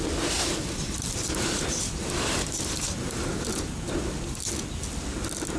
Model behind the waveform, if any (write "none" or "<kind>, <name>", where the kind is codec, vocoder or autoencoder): none